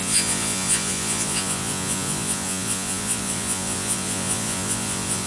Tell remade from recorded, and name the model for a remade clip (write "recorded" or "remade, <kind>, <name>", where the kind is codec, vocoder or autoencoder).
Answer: remade, vocoder, Vocos